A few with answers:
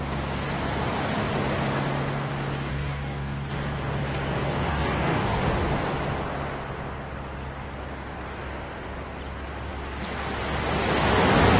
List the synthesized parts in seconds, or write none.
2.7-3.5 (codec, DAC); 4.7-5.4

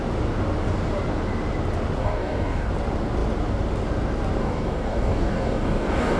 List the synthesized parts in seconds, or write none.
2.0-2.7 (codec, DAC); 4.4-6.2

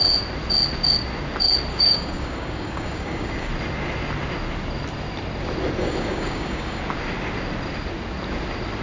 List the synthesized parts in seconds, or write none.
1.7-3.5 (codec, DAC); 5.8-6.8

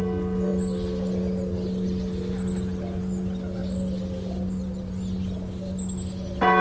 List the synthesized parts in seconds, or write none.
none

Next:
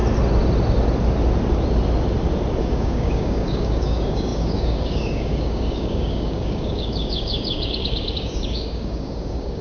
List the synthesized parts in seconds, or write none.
2.6-9.6 (codec, DAC)